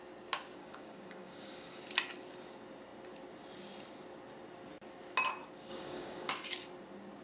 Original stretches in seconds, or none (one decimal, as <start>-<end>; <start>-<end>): 0.0-0.6; 1.8-5.7; 6.3-7.2